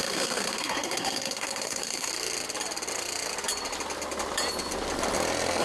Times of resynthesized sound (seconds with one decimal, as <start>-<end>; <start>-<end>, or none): 0.0-2.1

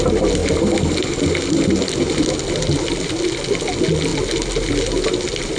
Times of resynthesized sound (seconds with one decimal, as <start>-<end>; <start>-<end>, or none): none

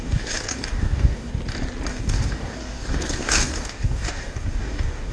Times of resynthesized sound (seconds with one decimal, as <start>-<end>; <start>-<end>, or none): 0.0-1.3; 1.9-5.1

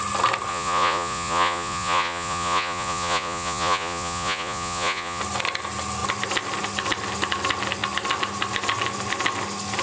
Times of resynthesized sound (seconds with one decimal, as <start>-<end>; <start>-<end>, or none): 0.5-5.2

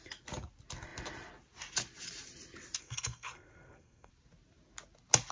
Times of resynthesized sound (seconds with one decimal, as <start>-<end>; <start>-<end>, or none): 2.8-4.1